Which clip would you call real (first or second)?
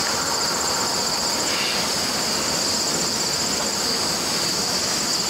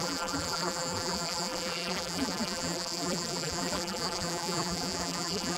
first